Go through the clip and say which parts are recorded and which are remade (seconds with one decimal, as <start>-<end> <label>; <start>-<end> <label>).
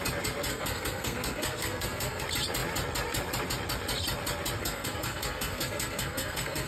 0.0-0.5 recorded; 0.5-2.2 remade; 2.2-4.6 recorded; 4.6-6.7 remade